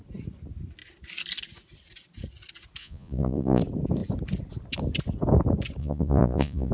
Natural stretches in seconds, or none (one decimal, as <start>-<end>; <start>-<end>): 0.0-2.8; 3.6-5.8